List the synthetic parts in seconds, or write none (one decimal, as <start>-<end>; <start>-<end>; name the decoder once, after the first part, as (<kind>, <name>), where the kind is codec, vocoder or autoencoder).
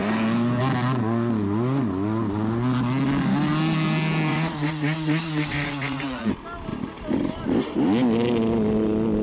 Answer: 4.3-6.3 (vocoder, Vocos)